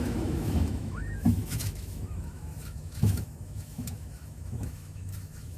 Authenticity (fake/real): fake